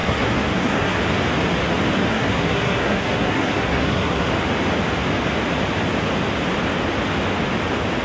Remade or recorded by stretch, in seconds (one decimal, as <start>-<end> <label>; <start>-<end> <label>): 0.0-1.0 remade; 1.0-2.1 recorded; 2.1-4.3 remade; 4.3-8.0 recorded

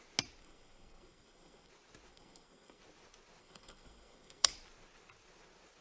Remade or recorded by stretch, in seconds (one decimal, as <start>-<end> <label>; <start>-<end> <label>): 0.0-0.4 recorded; 0.4-1.7 remade; 1.7-2.1 recorded; 2.1-2.8 remade; 2.8-3.4 recorded; 3.4-4.5 remade; 4.5-5.8 recorded

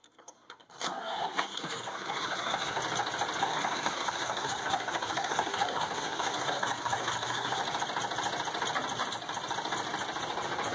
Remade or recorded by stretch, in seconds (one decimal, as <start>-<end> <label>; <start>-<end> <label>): 0.0-2.8 remade; 2.8-3.4 recorded; 3.4-7.6 remade; 7.6-10.7 recorded